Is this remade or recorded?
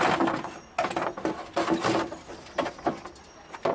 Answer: recorded